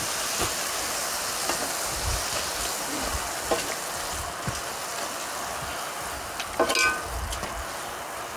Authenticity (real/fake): real